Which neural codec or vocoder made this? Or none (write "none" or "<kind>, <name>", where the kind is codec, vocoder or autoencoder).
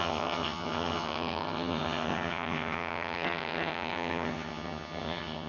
vocoder, HiFi-GAN